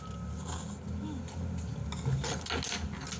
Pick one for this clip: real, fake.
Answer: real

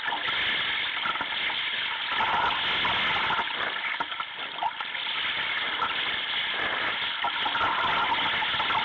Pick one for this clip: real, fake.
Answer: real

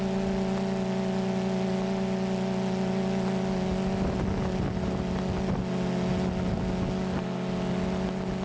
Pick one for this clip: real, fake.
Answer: real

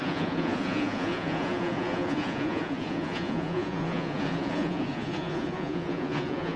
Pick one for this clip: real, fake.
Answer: fake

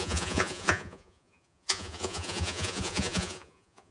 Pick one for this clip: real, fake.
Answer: fake